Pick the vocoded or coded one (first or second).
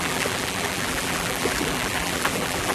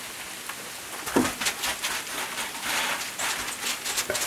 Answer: first